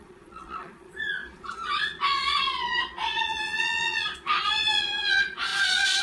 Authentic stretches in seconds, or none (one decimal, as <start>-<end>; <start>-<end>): none